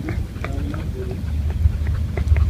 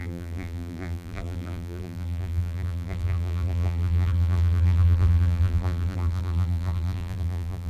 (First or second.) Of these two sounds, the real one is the first